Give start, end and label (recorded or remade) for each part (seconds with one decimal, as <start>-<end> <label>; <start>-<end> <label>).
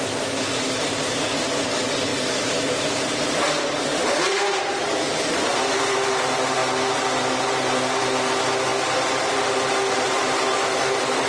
0.0-6.6 remade; 6.6-7.3 recorded; 7.3-11.3 remade